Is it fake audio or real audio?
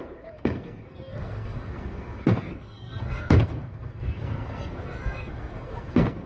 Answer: fake